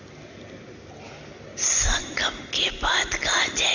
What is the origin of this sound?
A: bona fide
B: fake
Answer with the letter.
A